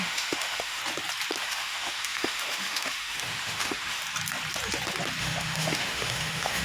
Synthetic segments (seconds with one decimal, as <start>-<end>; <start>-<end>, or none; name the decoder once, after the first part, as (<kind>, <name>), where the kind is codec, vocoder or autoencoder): 0.0-0.8 (autoencoder, DAC-VAE); 1.4-4.0; 5.2-6.6